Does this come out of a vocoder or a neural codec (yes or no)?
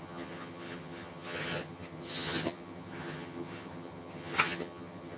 yes